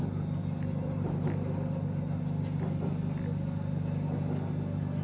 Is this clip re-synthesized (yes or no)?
no